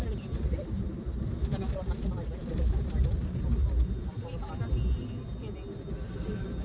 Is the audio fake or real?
real